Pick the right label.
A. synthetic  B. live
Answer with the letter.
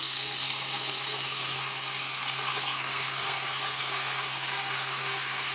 A